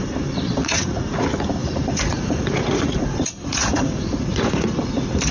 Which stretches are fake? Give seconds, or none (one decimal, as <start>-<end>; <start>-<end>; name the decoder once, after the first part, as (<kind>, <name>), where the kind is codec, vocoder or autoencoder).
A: 0.6-1.2 (vocoder, Vocos); 1.6-4.8